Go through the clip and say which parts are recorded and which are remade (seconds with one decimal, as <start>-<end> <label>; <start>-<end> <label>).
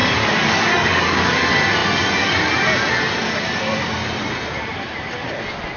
0.0-1.3 remade; 1.3-5.8 recorded